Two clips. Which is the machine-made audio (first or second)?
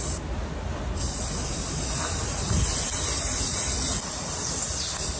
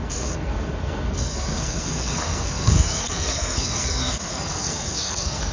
second